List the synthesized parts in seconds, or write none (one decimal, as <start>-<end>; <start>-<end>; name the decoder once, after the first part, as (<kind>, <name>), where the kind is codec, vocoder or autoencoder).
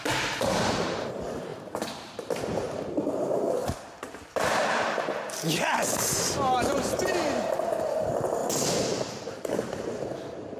0.0-1.5 (vocoder, BigVGAN v2); 3.1-8.4; 9.1-10.6